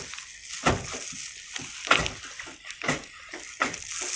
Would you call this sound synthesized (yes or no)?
no